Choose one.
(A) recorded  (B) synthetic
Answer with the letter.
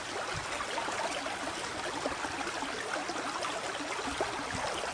A